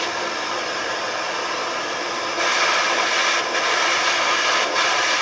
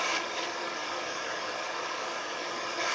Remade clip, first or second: second